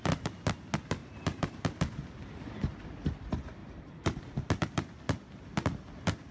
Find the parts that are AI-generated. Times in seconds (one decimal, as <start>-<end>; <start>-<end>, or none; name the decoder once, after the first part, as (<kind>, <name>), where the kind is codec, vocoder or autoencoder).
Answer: 1.0-2.1 (vocoder, BigVGAN v2); 3.6-4.2